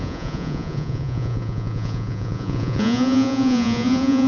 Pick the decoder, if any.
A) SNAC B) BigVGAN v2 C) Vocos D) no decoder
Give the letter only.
C